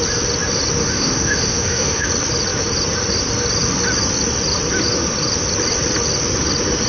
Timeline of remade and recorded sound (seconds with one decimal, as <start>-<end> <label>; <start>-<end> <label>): 0.0-0.8 recorded; 0.8-2.1 remade; 2.1-6.9 recorded